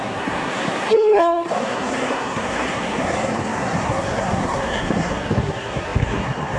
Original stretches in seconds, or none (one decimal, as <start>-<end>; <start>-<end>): none